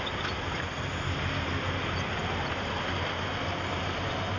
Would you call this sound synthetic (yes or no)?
no